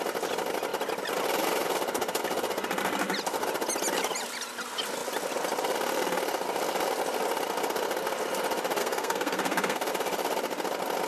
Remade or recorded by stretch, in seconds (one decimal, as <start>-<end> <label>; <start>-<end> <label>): 0.0-8.8 recorded; 8.8-9.9 remade; 9.9-11.1 recorded